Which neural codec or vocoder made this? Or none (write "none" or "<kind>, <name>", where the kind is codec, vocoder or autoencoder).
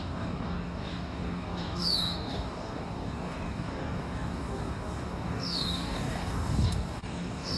codec, DAC